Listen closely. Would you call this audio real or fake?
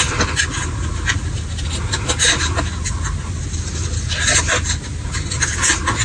real